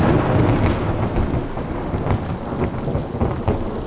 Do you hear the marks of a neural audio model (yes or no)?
no